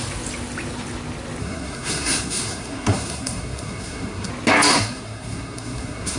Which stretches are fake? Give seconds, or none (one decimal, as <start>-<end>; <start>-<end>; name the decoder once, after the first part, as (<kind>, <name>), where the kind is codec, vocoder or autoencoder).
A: 1.4-4.3 (codec, SNAC); 4.7-6.2